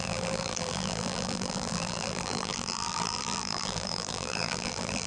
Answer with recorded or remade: remade